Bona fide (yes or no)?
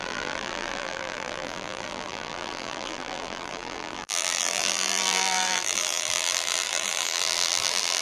no